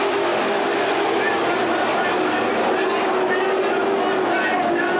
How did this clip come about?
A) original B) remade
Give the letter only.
A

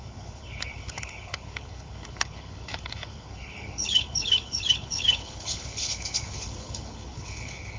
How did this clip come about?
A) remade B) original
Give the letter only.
A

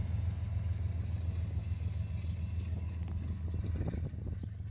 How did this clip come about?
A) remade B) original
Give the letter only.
B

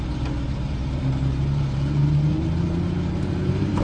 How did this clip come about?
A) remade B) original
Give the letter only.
A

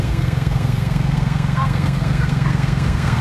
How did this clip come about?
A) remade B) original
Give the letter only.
A